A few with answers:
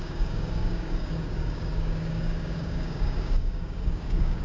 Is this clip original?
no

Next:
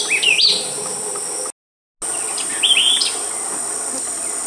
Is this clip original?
yes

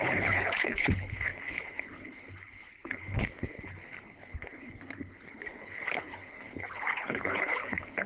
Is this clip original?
no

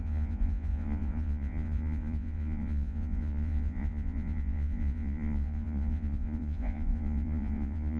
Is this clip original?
no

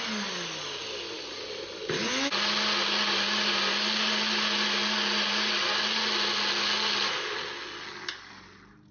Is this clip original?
yes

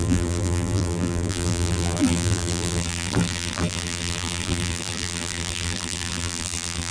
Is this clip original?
no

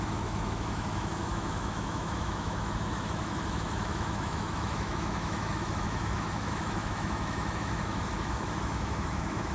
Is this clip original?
no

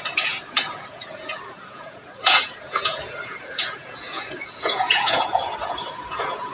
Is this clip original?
no